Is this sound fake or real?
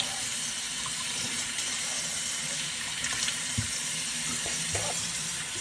fake